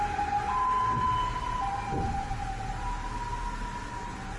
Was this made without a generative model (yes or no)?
yes